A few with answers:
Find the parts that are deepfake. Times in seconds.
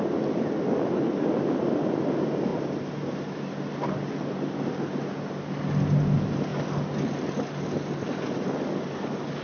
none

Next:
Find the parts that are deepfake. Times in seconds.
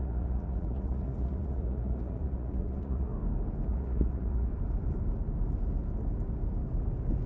0.0-3.1 (vocoder, Vocos); 3.7-4.5